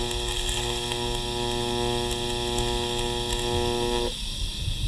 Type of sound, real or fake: real